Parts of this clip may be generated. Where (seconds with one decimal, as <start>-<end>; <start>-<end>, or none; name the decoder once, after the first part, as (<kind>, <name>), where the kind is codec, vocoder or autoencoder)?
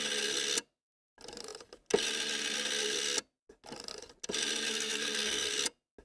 4.7-5.5 (codec, SNAC)